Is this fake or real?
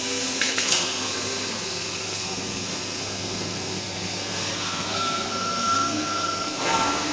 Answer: fake